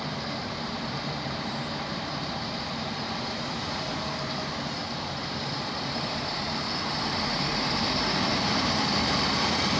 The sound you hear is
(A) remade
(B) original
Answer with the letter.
A